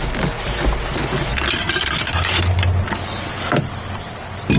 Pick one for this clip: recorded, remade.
recorded